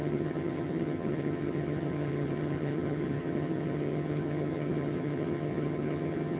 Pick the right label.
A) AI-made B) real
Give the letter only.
A